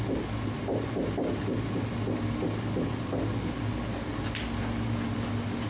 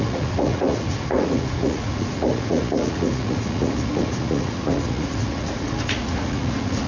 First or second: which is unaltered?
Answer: first